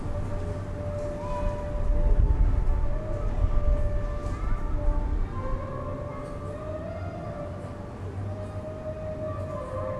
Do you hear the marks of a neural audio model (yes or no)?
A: no